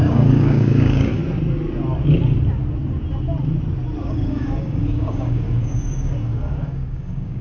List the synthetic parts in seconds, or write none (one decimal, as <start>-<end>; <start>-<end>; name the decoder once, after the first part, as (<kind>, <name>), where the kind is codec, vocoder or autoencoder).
0.0-1.2 (codec, DAC); 4.0-7.4